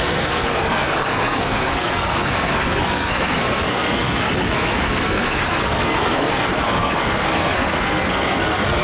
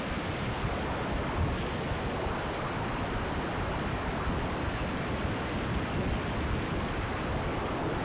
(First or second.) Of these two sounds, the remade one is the first